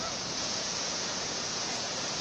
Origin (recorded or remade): remade